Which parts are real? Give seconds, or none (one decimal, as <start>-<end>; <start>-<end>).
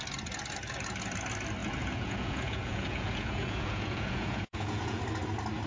0.0-1.6; 5.0-5.7